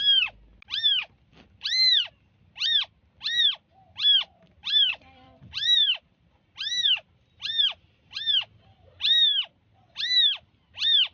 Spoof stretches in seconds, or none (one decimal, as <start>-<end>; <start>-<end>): 4.6-6.5